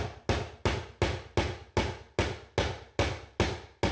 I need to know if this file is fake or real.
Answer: real